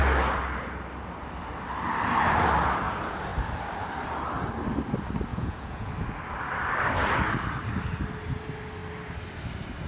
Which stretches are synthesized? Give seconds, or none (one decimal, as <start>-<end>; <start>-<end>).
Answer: 5.3-5.9